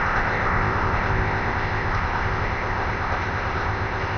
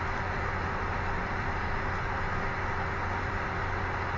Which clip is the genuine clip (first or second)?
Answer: second